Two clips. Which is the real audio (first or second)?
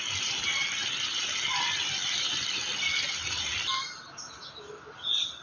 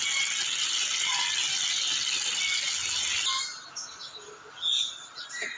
second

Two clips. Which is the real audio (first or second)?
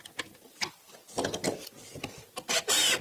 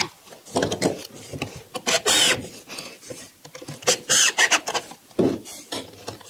first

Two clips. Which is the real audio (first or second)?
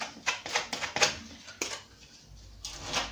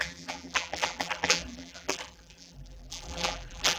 first